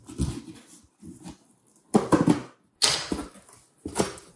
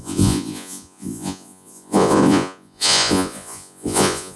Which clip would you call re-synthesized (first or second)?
second